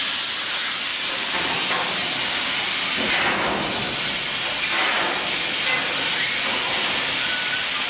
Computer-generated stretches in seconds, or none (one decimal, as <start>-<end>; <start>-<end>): none